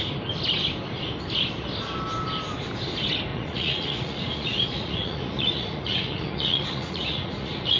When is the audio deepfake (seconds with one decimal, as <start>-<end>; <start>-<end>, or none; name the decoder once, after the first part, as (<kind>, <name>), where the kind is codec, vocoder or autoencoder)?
3.3-7.8 (vocoder, Vocos)